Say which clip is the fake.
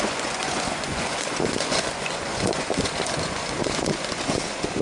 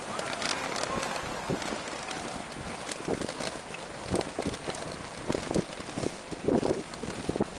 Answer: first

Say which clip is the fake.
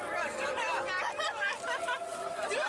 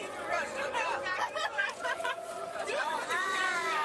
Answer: second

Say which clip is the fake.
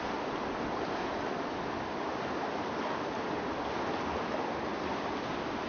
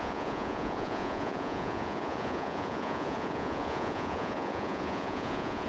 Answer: second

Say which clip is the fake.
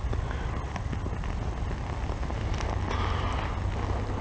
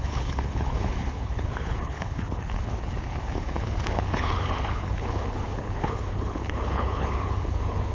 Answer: second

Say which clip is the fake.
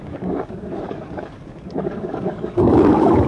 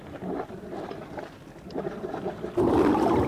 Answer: first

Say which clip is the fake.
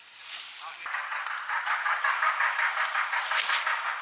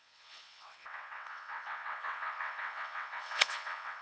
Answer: second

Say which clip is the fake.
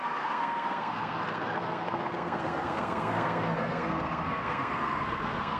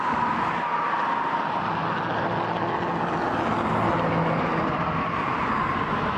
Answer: first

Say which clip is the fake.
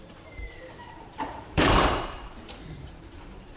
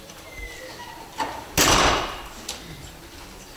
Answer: first